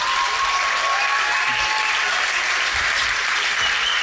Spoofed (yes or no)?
no